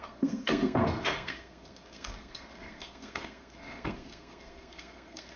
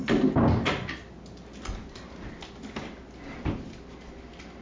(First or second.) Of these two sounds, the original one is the second